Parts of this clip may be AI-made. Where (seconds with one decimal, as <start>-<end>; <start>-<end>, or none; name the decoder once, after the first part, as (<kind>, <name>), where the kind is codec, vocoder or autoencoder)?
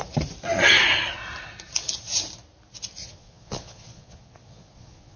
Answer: 3.0-5.2 (vocoder, Vocos)